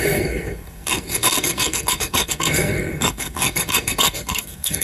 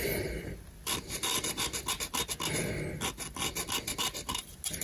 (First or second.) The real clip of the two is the second